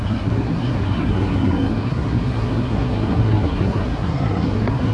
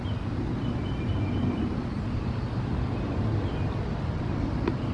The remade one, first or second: first